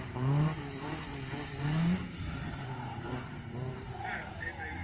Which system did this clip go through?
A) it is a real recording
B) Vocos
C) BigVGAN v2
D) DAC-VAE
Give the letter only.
C